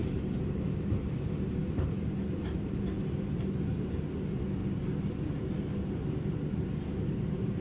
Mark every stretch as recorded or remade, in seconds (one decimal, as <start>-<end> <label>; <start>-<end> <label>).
0.0-4.6 remade; 4.6-6.3 recorded; 6.3-7.6 remade